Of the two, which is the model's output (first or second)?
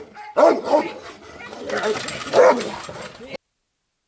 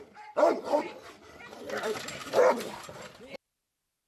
second